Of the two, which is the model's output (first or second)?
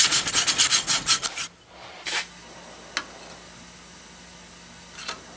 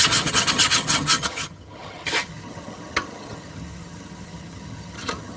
second